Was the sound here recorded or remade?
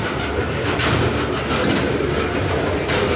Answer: recorded